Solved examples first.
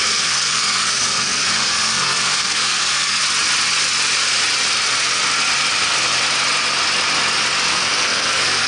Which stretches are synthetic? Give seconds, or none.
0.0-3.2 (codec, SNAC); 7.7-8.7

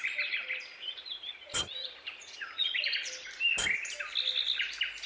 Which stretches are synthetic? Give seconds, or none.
0.7-3.1 (vocoder, Vocos)

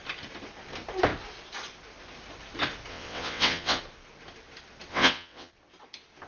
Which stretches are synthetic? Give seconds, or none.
2.9-3.8 (vocoder, WaveNeXt); 4.9-5.5

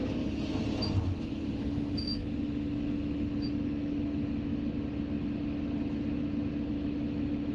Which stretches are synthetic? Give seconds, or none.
1.0-4.5 (autoencoder, DAC-VAE); 6.7-7.5

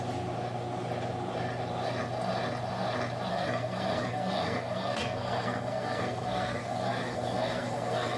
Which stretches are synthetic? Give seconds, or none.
3.3-8.2 (codec, SNAC)